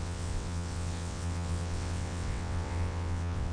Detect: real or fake fake